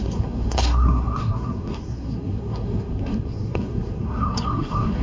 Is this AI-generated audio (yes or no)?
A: yes